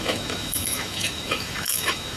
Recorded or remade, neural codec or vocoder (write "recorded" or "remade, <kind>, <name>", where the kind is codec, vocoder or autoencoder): remade, autoencoder, DAC-VAE